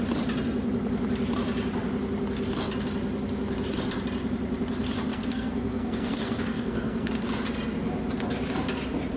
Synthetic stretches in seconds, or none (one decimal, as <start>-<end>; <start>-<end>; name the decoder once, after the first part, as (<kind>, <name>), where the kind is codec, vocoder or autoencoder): 5.1-7.3 (codec, SNAC)